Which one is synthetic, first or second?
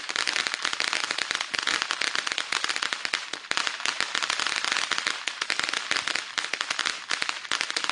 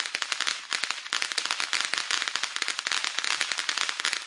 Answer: first